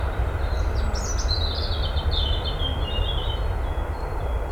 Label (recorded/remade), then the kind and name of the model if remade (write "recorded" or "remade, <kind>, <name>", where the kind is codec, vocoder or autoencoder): recorded